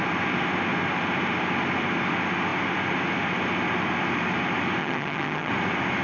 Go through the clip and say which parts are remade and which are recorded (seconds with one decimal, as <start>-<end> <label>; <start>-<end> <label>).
0.0-4.8 recorded; 4.8-5.5 remade; 5.5-6.0 recorded